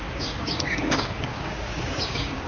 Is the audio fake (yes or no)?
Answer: yes